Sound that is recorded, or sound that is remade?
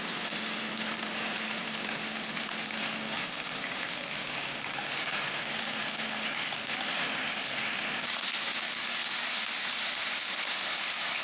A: recorded